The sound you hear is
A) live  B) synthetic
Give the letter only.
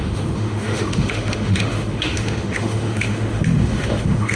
B